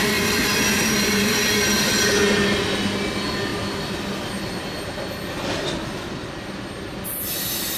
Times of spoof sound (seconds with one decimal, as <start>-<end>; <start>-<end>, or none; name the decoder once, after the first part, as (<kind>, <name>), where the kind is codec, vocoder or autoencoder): none

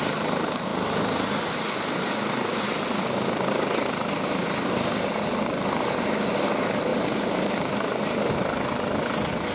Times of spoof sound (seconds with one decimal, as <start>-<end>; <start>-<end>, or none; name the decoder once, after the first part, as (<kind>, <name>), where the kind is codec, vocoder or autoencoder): none

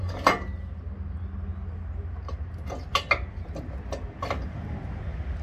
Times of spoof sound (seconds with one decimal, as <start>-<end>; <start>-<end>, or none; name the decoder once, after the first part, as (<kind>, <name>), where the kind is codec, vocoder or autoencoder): none

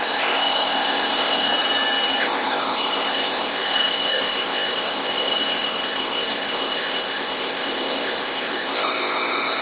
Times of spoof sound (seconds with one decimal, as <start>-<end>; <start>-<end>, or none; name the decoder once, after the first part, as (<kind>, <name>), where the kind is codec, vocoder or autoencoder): 0.0-1.5 (codec, ZipCodec); 2.2-9.6

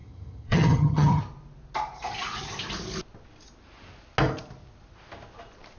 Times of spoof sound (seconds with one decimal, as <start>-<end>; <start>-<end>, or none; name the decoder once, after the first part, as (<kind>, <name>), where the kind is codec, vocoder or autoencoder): 0.0-1.2 (vocoder, HiFi-GAN)